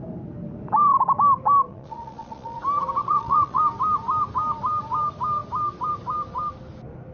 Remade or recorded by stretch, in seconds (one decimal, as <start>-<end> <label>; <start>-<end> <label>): 0.0-1.7 recorded; 1.7-2.6 remade; 2.6-3.0 recorded; 3.0-3.6 remade; 3.6-7.1 recorded